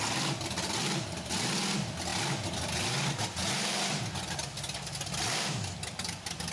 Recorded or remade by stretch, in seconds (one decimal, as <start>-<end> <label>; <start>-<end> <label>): 0.0-6.5 recorded